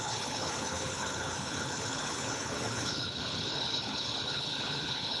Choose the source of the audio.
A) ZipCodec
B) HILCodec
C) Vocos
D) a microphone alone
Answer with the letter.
B